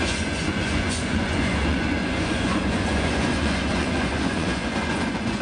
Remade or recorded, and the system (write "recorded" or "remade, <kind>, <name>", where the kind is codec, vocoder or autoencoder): remade, vocoder, Vocos